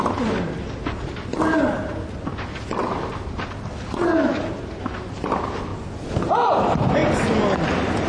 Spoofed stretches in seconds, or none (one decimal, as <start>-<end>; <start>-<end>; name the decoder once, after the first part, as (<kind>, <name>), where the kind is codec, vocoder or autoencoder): none